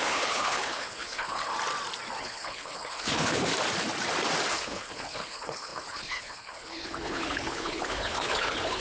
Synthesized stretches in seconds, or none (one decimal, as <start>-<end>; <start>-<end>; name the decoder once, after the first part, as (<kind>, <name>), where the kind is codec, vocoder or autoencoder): 0.0-1.5 (codec, HILCodec); 2.2-3.5; 4.5-8.8